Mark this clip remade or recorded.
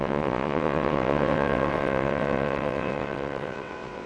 remade